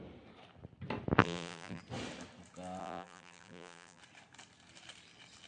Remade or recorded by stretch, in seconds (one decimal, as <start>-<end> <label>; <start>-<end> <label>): 0.0-1.2 recorded; 1.2-1.8 remade; 1.8-2.8 recorded; 2.8-4.0 remade; 4.0-5.5 recorded